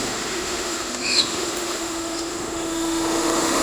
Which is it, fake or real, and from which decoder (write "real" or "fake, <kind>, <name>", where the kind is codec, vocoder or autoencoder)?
fake, autoencoder, DAC-VAE